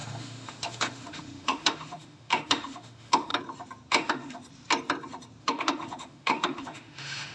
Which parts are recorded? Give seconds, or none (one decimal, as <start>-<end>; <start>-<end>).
3.3-3.9; 4.4-5.4